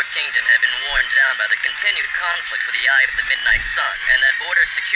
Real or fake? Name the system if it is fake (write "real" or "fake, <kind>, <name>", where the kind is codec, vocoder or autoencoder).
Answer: real